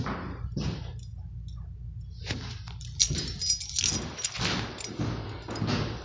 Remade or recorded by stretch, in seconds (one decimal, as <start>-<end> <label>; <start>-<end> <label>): 0.0-6.0 recorded